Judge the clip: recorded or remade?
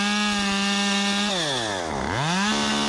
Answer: recorded